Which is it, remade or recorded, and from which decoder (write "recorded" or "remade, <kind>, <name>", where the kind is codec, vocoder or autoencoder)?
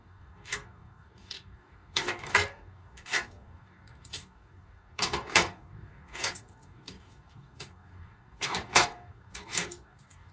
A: remade, codec, DAC